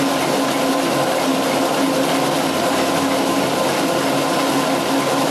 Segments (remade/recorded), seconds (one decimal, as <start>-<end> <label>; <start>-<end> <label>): 0.0-5.3 recorded